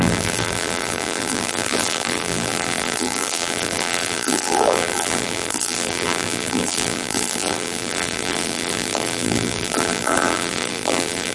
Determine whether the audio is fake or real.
fake